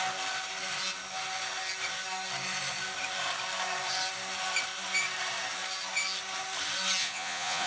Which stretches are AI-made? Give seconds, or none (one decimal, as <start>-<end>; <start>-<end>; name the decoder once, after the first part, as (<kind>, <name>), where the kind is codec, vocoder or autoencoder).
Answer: 7.0-7.7 (vocoder, Vocos)